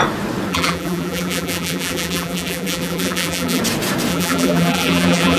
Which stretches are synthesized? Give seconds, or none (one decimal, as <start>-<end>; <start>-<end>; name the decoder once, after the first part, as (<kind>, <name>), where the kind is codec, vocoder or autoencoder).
0.5-3.6 (vocoder, BigVGAN v2); 4.1-5.4